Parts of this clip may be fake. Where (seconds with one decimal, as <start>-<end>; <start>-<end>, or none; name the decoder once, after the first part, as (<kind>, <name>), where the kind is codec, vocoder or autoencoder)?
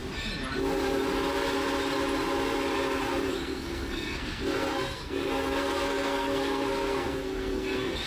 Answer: 3.3-8.1 (codec, SNAC)